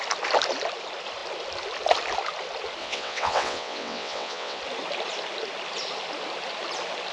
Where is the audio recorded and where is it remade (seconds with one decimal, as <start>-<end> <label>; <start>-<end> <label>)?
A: 0.0-2.8 recorded; 2.8-4.6 remade; 4.6-7.1 recorded